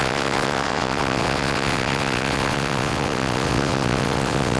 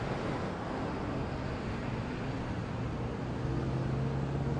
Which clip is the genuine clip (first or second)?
second